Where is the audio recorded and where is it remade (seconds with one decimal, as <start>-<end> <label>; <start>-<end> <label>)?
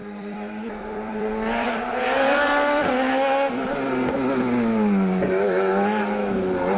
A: 0.0-2.9 remade; 2.9-6.8 recorded